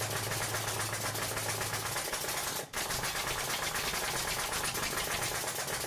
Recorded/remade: recorded